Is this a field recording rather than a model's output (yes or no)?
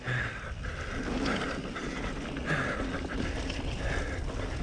yes